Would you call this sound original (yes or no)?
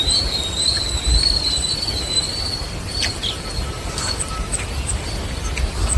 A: yes